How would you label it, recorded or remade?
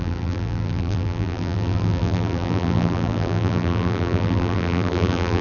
remade